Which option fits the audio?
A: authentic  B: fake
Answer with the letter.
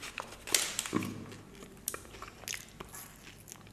A